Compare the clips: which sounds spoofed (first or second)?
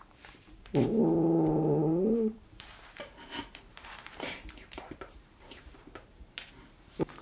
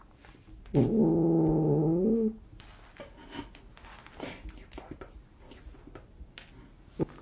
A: first